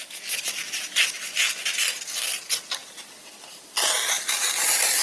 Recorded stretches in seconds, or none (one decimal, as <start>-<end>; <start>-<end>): 0.0-5.0